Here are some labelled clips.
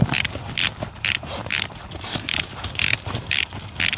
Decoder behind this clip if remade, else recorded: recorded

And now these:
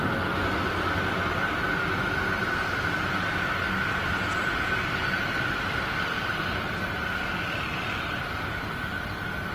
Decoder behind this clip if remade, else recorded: recorded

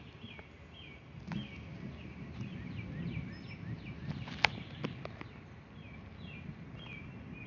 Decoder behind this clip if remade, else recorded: recorded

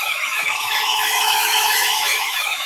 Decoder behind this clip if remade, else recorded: remade, autoencoder, DAC-VAE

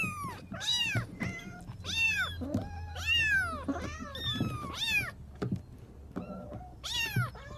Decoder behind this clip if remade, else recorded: recorded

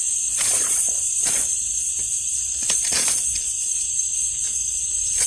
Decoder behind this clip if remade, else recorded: remade, vocoder, Vocos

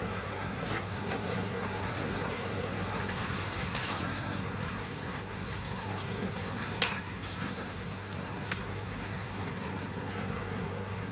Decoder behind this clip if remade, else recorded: remade, codec, SNAC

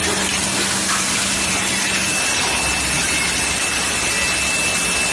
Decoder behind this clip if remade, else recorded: recorded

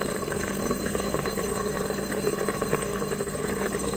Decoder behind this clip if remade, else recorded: remade, codec, SNAC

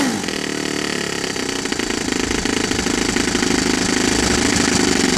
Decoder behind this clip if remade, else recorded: recorded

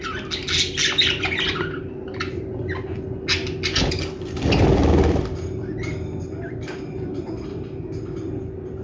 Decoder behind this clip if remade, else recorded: recorded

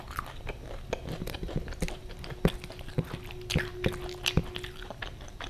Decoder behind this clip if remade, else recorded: recorded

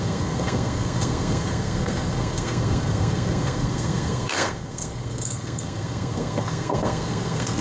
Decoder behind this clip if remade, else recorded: remade, codec, SNAC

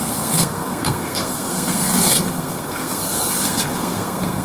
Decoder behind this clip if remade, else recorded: remade, codec, SNAC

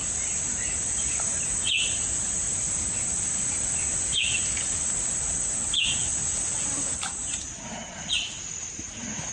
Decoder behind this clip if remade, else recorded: recorded